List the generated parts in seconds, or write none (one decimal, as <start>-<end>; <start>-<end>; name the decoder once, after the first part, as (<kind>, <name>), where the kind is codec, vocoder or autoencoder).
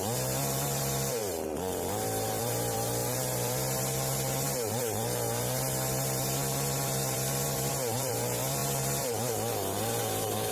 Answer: 0.0-10.5 (vocoder, BigVGAN v2)